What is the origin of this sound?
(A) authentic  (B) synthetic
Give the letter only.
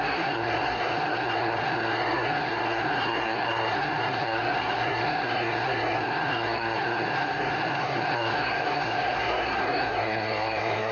B